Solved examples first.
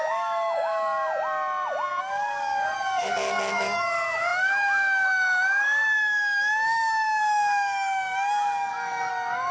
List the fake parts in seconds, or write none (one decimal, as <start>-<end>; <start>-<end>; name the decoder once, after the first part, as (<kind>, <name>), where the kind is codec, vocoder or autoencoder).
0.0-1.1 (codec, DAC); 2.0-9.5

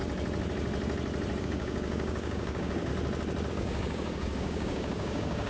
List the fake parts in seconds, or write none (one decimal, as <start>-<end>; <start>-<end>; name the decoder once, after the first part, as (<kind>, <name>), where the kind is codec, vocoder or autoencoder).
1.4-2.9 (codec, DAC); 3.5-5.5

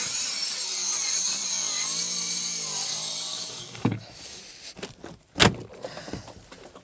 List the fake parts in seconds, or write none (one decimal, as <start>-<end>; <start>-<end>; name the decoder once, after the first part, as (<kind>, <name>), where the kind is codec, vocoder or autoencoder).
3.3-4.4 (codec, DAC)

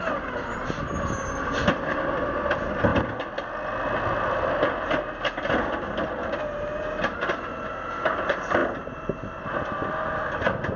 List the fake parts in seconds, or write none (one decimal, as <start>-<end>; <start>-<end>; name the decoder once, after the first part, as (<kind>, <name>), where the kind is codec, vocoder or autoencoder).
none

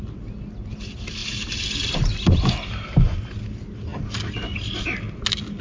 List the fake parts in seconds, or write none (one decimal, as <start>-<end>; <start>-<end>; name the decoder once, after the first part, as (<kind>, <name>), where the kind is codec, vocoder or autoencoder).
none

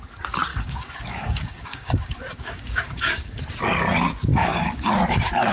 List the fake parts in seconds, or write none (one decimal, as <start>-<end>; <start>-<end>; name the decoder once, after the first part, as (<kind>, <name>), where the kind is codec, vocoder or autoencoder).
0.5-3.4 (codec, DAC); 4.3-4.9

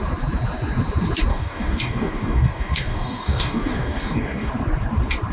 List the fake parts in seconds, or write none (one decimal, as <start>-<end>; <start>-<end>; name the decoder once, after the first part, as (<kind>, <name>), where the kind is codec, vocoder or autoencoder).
1.3-4.5 (codec, DAC)